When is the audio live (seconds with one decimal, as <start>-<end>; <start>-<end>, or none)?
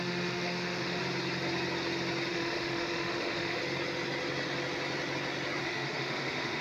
1.0-2.3; 3.6-5.6